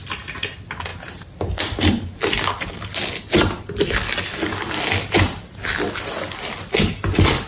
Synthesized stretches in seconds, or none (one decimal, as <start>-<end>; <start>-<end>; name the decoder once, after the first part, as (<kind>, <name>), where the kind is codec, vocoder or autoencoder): none